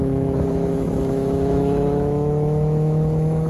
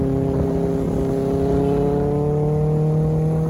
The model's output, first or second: first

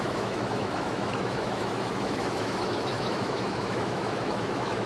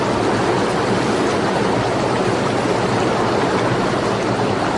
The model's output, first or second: first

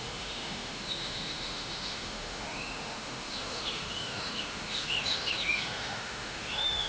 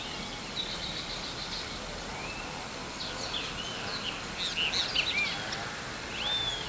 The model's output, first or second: first